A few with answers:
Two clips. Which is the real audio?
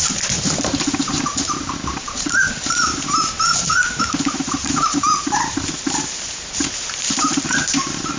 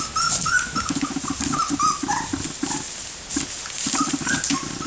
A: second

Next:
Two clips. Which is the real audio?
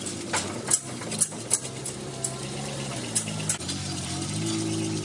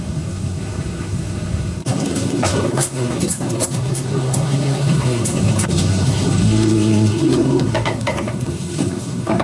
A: first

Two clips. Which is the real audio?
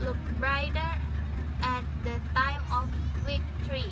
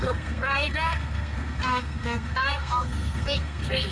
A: first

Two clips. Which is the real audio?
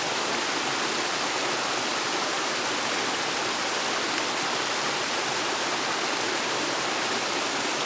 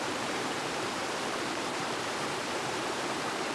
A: first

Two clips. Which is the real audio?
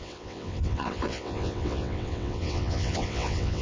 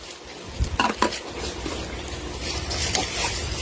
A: second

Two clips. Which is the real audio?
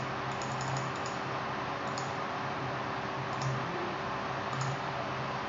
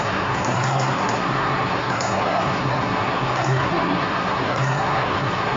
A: first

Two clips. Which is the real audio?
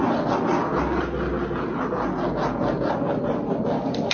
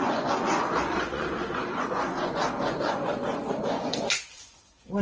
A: first